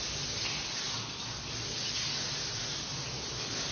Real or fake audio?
real